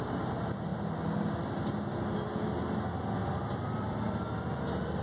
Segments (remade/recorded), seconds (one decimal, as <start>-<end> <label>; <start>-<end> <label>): 0.0-3.2 recorded; 3.2-4.1 remade; 4.1-5.0 recorded

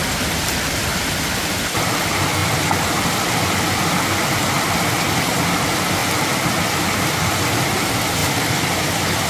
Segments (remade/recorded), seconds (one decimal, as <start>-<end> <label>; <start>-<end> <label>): 0.0-2.4 recorded; 2.4-3.6 remade; 3.6-8.2 recorded; 8.2-9.3 remade

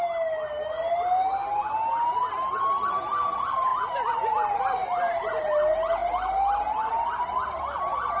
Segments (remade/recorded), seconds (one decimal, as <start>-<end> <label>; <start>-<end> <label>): 0.0-8.2 recorded

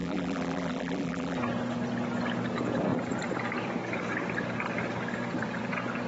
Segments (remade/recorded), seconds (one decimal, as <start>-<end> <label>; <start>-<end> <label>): 0.0-1.4 remade; 1.4-6.1 recorded

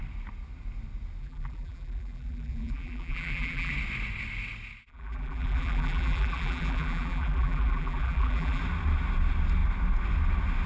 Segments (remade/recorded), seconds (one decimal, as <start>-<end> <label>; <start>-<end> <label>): 0.0-1.2 recorded; 1.2-3.7 remade; 3.7-4.9 recorded; 4.9-8.6 remade; 8.6-10.7 recorded